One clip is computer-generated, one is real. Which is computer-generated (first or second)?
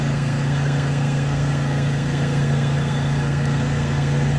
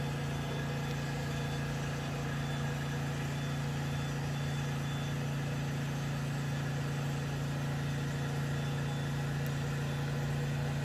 first